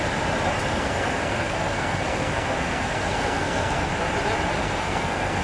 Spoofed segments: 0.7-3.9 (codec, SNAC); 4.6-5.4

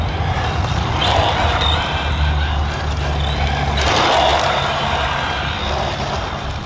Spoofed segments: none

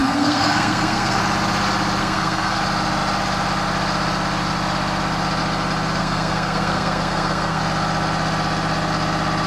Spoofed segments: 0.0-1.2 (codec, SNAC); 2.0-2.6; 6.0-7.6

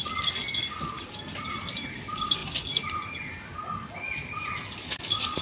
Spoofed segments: none

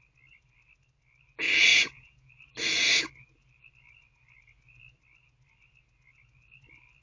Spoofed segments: 1.7-2.3 (vocoder, Vocos)

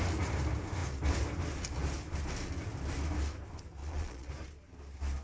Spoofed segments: 3.8-4.3 (vocoder, Vocos)